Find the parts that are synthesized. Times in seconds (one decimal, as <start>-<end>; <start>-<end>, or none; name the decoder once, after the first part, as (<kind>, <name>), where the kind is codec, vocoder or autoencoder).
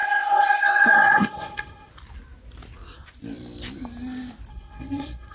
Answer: 0.0-1.9 (codec, SNAC); 4.5-5.3